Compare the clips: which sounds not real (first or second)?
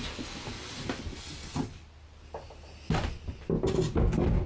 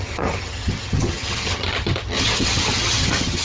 second